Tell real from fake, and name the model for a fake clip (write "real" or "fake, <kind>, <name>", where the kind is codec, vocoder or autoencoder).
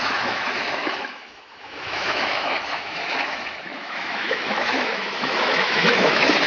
fake, autoencoder, DAC-VAE